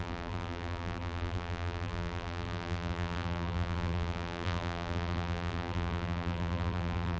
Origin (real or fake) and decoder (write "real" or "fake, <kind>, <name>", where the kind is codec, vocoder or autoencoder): fake, vocoder, BigVGAN v2